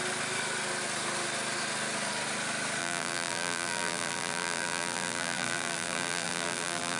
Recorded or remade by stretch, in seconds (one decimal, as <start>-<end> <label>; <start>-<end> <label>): 0.0-2.8 recorded; 2.8-7.0 remade